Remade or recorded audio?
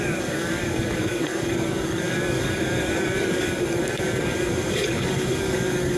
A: remade